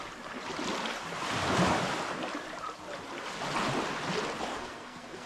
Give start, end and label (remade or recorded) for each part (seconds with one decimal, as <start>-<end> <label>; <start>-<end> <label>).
0.0-4.5 recorded; 4.5-5.3 remade